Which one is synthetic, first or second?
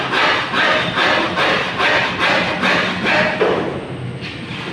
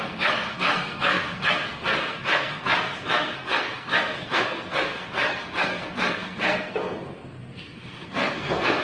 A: second